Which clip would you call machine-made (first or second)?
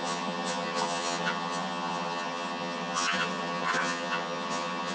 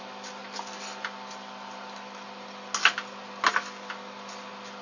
first